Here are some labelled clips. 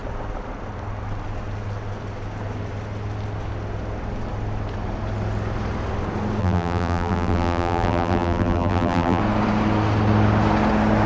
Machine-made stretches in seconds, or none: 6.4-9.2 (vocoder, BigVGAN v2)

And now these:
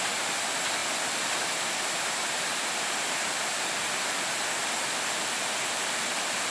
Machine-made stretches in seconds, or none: 0.8-4.7 (vocoder, BigVGAN v2)

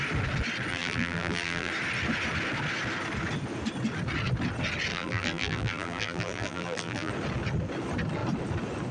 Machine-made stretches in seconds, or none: 0.7-1.7 (vocoder, BigVGAN v2); 4.9-7.1

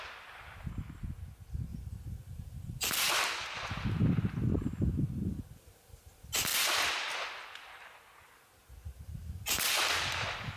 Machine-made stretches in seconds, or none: 1.7-2.9 (vocoder, BigVGAN v2)

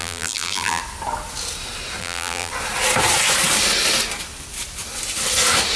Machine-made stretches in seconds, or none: 0.0-0.8 (vocoder, BigVGAN v2); 2.0-2.5